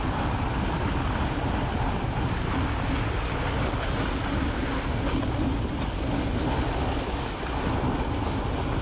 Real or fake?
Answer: real